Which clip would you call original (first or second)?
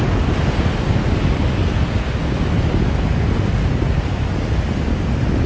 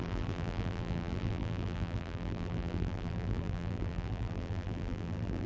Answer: first